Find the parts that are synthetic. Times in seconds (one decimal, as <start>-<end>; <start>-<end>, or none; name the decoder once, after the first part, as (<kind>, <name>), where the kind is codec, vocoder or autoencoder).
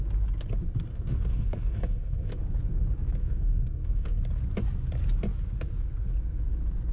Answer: 0.9-2.4 (codec, SNAC); 3.2-4.2